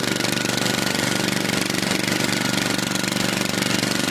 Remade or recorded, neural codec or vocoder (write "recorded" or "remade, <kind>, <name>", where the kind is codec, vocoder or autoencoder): recorded